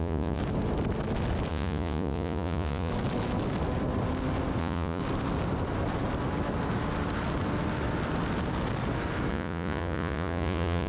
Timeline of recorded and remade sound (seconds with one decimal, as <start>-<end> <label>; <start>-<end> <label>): 0.0-0.4 remade; 0.4-1.5 recorded; 1.5-2.9 remade; 2.9-4.6 recorded; 4.6-5.0 remade; 5.0-9.3 recorded; 9.3-10.9 remade

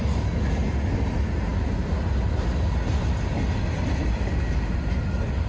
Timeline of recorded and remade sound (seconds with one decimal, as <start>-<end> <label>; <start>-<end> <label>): 0.0-5.5 recorded

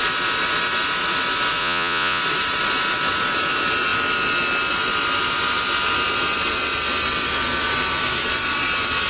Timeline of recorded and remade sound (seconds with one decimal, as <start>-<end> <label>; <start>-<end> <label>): 0.0-1.6 recorded; 1.6-2.2 remade; 2.2-9.1 recorded

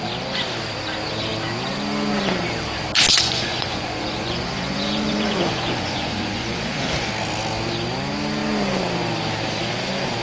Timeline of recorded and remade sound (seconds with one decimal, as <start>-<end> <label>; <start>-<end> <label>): 0.0-3.1 recorded; 3.1-7.1 remade; 7.1-10.2 recorded

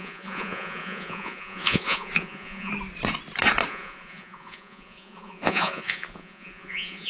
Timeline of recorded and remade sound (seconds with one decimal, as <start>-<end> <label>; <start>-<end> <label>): 0.0-2.7 remade; 2.7-3.7 recorded; 3.7-7.1 remade

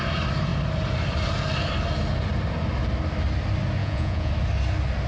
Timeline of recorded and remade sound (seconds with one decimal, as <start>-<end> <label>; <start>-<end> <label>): 0.0-3.8 recorded; 3.8-4.3 remade; 4.3-5.1 recorded

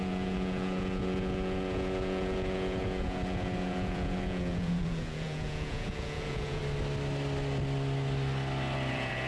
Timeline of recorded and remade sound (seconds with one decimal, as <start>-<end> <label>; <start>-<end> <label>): 0.0-6.6 remade; 6.6-8.9 recorded; 8.9-9.3 remade

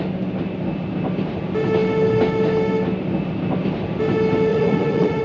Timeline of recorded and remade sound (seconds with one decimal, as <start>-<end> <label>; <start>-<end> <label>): 0.0-4.5 recorded; 4.5-5.2 remade